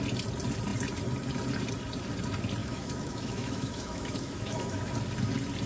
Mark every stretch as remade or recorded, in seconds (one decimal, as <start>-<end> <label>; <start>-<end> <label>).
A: 0.0-2.6 recorded; 2.6-4.9 remade; 4.9-5.7 recorded